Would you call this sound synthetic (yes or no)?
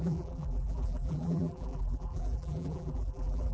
yes